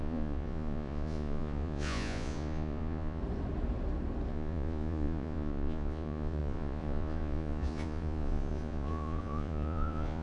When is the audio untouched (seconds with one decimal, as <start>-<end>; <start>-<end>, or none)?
3.2-4.3